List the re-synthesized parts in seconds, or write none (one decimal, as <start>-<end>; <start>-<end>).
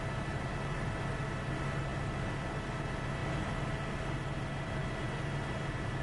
none